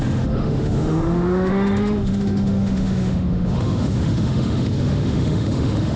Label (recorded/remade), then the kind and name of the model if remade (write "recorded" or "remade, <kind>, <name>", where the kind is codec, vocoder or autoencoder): remade, autoencoder, DAC-VAE